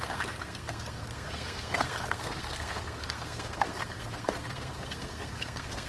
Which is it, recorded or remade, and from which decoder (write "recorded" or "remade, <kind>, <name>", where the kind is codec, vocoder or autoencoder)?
remade, codec, SNAC